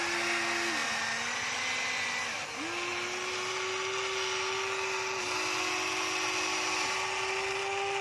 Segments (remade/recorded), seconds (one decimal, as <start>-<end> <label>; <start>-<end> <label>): 0.0-8.0 recorded